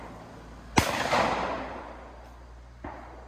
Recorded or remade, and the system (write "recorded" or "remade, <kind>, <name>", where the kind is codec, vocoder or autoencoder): recorded